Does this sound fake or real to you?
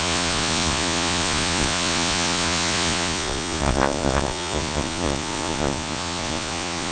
fake